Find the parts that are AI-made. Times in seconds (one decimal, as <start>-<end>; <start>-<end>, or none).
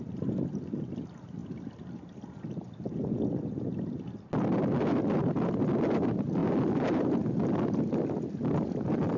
6.4-7.5